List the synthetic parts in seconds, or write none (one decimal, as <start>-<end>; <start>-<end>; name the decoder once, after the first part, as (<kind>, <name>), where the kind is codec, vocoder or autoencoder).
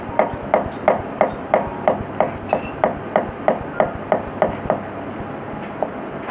none